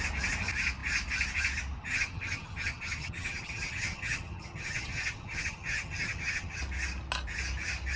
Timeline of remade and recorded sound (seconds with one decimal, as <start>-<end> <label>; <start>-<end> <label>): 0.0-1.8 recorded; 1.8-6.6 remade; 6.6-8.0 recorded

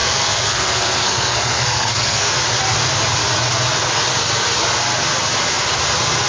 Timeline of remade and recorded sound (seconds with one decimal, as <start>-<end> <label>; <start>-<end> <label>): 0.0-2.3 remade; 2.3-6.3 recorded

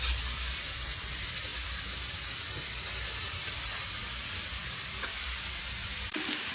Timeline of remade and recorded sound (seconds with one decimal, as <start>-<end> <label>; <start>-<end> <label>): 0.0-6.5 remade

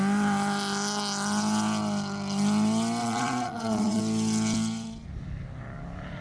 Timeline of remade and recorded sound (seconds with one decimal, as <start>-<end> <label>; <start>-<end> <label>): 0.0-3.0 recorded; 3.0-4.0 remade; 4.0-6.2 recorded

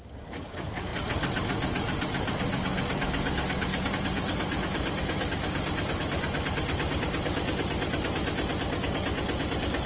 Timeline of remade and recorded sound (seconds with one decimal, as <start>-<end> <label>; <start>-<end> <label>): 0.0-9.9 recorded